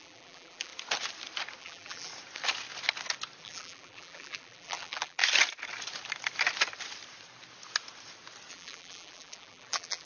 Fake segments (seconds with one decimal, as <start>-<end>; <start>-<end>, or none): 0.0-0.7; 1.6-2.1; 3.4-5.2; 8.5-10.1